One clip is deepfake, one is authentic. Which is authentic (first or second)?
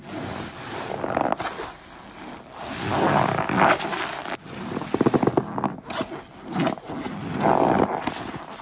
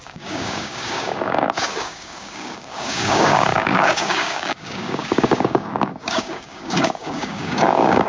first